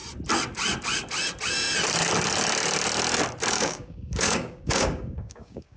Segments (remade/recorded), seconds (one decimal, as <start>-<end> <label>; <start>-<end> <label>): 0.0-3.5 recorded; 3.5-5.8 remade